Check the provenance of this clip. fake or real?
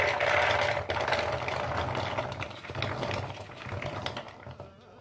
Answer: real